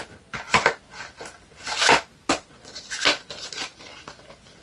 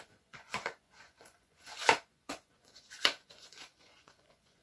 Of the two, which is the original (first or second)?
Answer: first